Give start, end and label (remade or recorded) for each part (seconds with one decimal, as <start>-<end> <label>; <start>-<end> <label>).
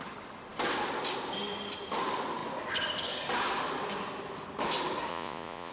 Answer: 0.0-5.1 recorded; 5.1-5.7 remade